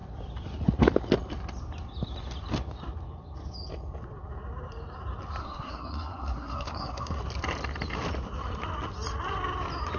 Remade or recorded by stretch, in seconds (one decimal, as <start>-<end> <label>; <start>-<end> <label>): 0.0-5.4 recorded; 5.4-7.2 remade; 7.2-10.0 recorded